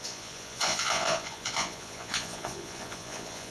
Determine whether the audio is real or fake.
fake